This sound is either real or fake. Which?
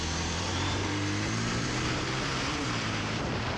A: fake